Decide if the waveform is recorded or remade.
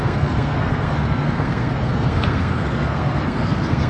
remade